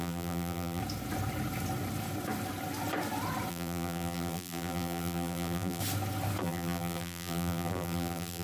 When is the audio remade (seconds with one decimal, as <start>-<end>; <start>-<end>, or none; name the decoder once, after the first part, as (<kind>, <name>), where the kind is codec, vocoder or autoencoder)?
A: 0.0-0.8 (vocoder, BigVGAN v2); 3.5-5.8; 6.4-8.4